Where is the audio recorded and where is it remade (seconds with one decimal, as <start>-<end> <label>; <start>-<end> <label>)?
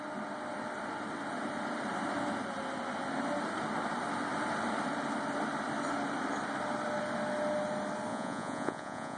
0.0-8.1 recorded; 8.1-9.2 remade